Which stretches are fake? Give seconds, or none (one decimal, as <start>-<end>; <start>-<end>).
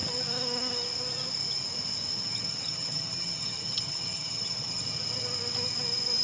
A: 2.1-4.8